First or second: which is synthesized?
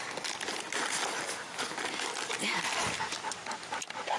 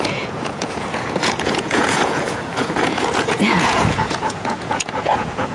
second